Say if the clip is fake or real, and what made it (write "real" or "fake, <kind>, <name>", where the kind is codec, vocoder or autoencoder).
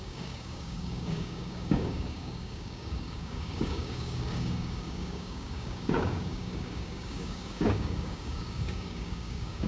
fake, codec, DAC